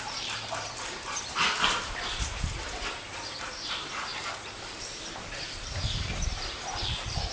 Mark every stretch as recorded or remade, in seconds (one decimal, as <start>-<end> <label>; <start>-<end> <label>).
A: 0.0-4.1 remade; 4.1-4.6 recorded; 4.6-7.3 remade